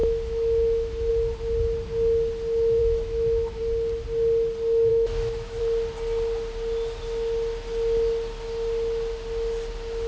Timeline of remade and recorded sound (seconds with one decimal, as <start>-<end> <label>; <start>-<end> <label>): 0.0-1.1 remade; 1.1-2.8 recorded; 2.8-3.6 remade; 3.6-4.9 recorded; 4.9-5.6 remade; 5.6-10.1 recorded